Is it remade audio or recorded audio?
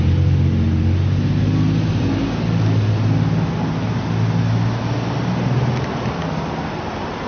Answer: recorded